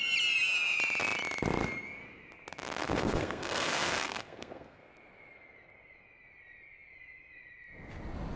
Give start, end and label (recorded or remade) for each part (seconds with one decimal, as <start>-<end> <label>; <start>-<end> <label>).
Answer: 0.0-2.8 recorded; 2.8-4.9 remade; 4.9-8.4 recorded